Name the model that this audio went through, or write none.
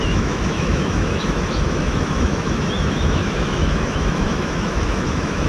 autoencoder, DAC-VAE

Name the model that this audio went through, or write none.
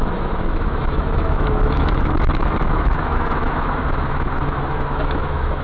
autoencoder, DAC-VAE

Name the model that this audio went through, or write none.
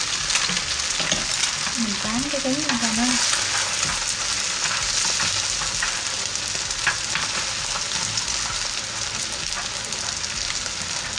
none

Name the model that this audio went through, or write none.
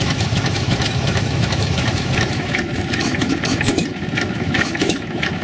autoencoder, DAC-VAE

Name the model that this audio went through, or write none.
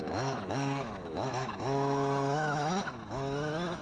autoencoder, DAC-VAE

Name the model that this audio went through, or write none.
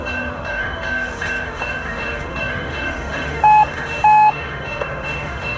autoencoder, DAC-VAE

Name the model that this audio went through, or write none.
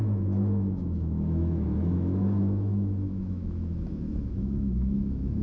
autoencoder, DAC-VAE